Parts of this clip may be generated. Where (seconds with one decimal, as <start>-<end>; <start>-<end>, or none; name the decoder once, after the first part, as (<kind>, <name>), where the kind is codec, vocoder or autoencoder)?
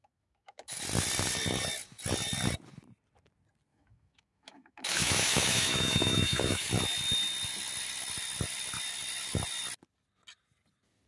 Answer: 0.0-0.8 (autoencoder, DAC-VAE); 3.7-6.7